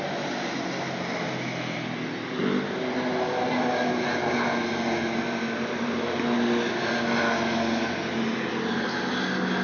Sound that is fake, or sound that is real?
real